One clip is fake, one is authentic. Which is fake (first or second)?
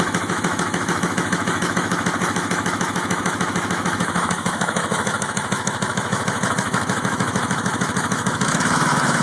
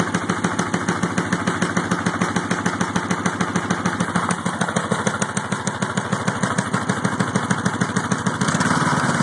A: first